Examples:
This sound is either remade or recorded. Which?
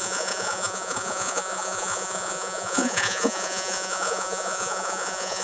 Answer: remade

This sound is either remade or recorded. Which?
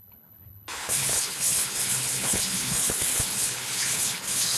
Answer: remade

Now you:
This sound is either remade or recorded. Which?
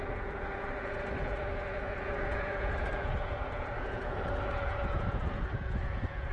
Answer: remade